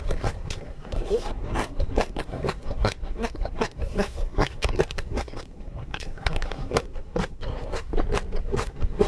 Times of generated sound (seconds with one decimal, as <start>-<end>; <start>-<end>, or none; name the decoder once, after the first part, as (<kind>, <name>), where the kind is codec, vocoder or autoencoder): 0.0-7.9 (codec, SNAC); 8.4-9.1